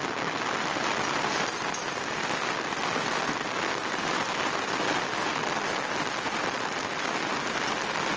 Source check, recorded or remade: recorded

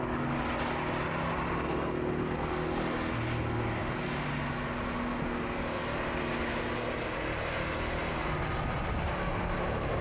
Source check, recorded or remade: recorded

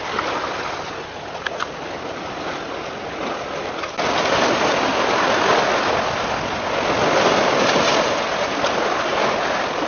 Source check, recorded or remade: recorded